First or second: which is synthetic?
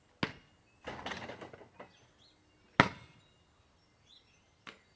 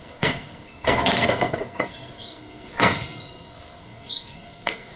second